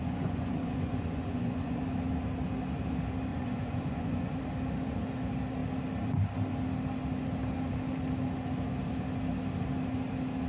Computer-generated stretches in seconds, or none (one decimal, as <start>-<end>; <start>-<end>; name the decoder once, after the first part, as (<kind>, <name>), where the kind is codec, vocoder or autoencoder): 0.0-1.8 (vocoder, Vocos); 3.3-4.4